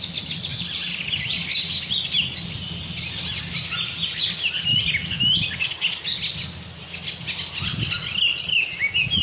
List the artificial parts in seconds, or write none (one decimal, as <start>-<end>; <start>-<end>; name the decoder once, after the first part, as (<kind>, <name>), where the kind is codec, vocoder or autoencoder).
0.5-1.0 (vocoder, BigVGAN v2); 8.3-9.2